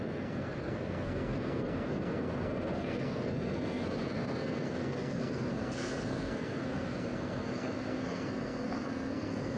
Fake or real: fake